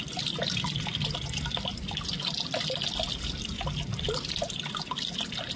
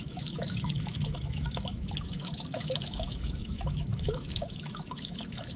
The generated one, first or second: second